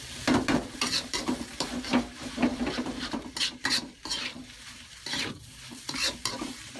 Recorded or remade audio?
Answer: remade